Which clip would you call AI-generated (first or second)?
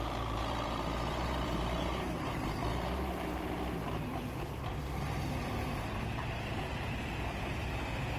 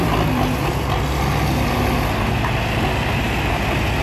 first